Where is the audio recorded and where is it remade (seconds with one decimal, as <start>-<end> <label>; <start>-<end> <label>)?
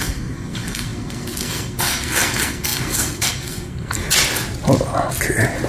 0.0-4.0 remade; 4.0-5.7 recorded